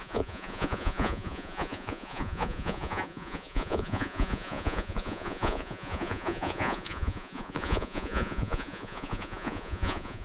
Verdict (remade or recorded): remade